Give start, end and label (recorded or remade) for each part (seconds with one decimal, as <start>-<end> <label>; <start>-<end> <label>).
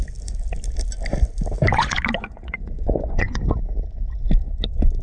0.0-1.7 recorded; 1.7-3.4 remade; 3.4-5.0 recorded